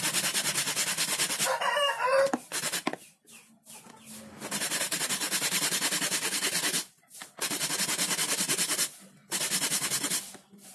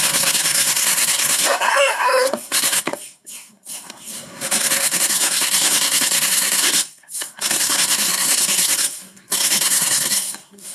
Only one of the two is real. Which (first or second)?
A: first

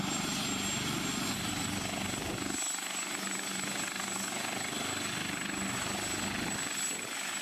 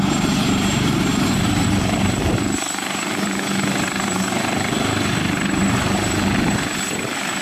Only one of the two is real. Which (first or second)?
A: first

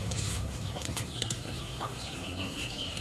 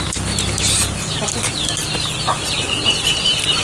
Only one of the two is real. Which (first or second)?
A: second